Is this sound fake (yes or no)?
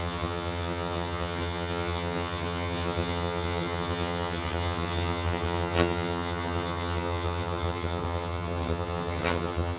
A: yes